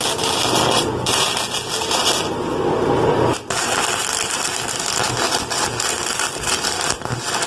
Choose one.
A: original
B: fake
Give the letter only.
A